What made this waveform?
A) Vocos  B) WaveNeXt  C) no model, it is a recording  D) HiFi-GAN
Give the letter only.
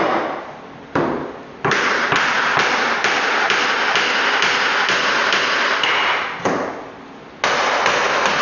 C